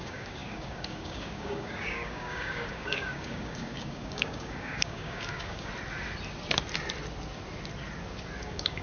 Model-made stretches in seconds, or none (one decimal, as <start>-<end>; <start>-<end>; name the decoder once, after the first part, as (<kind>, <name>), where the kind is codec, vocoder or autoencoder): 0.0-5.7 (codec, DAC); 8.4-8.8